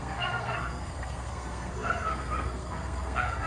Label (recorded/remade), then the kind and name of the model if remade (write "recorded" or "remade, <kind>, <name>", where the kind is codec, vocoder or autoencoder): remade, codec, SNAC